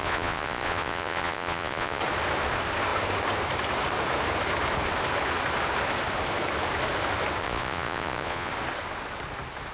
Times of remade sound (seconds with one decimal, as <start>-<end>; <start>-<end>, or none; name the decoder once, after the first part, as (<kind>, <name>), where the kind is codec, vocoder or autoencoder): 0.0-2.0 (vocoder, Vocos); 7.4-8.5